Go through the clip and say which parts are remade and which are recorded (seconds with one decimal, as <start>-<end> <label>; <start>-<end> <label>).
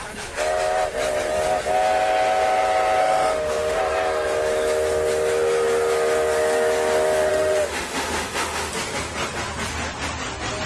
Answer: 0.0-3.0 recorded; 3.0-3.8 remade; 3.8-7.3 recorded; 7.3-8.7 remade; 8.7-10.7 recorded